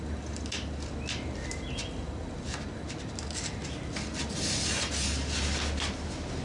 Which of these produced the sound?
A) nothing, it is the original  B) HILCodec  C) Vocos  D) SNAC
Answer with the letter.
A